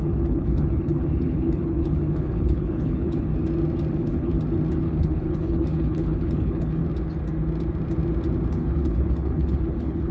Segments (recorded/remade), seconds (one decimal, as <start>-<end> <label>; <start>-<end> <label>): 0.0-3.3 remade; 3.3-3.9 recorded; 3.9-4.3 remade; 4.3-4.8 recorded; 4.8-6.8 remade; 6.8-8.5 recorded; 8.5-10.1 remade